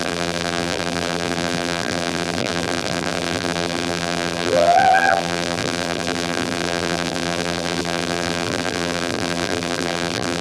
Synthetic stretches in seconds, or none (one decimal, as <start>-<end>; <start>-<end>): 0.0-10.4